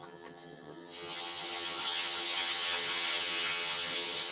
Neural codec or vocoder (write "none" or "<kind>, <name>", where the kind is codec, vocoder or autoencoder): vocoder, HiFi-GAN